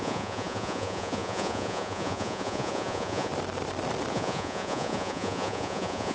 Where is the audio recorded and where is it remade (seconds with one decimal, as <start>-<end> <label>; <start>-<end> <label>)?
0.0-3.3 remade; 3.3-4.1 recorded; 4.1-6.1 remade